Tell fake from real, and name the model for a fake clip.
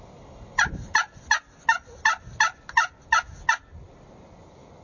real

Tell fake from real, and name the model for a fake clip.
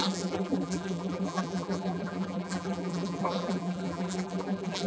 fake, vocoder, BigVGAN v2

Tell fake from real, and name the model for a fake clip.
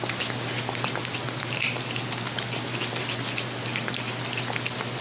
real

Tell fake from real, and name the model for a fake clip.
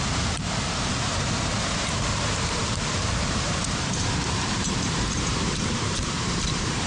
fake, vocoder, BigVGAN v2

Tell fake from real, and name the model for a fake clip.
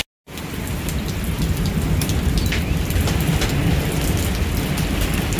real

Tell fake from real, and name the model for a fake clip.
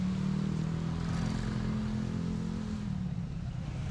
real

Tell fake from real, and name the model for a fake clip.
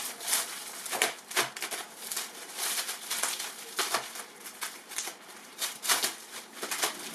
real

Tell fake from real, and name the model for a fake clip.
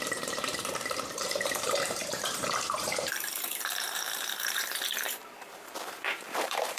fake, vocoder, BigVGAN v2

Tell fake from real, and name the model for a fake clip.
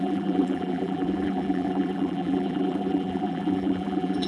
fake, vocoder, BigVGAN v2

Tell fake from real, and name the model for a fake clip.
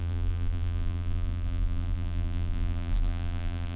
fake, vocoder, BigVGAN v2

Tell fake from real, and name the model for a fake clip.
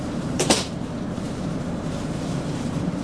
fake, vocoder, BigVGAN v2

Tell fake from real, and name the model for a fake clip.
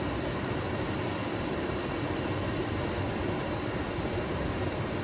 real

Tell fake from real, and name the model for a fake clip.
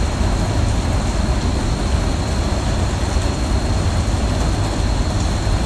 real